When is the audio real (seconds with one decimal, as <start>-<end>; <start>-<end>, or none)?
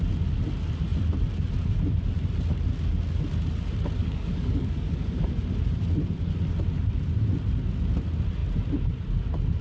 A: 0.0-4.0; 5.3-9.6